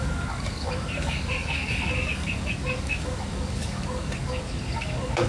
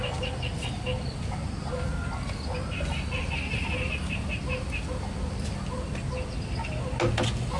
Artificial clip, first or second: first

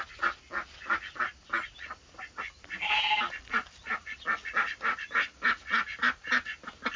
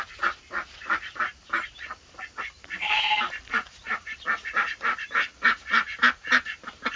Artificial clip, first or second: second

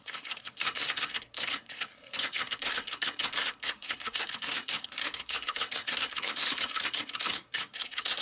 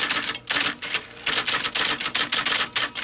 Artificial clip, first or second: first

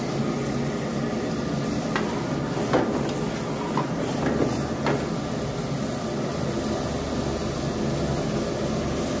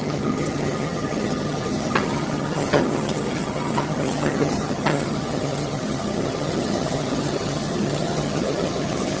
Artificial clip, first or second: second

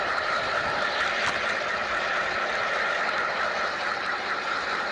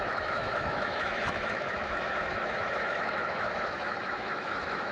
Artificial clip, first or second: second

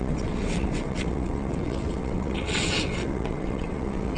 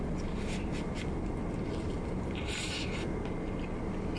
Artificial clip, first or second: first